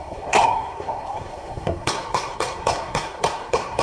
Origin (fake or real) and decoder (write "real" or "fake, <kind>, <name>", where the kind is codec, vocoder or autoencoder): fake, codec, SNAC